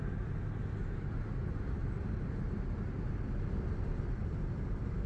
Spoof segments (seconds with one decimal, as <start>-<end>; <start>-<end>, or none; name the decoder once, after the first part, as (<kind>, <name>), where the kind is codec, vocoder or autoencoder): none